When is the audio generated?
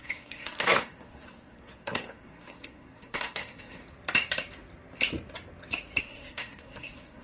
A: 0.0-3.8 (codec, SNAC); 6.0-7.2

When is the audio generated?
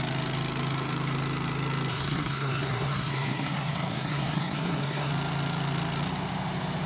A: 1.9-5.1 (codec, SNAC)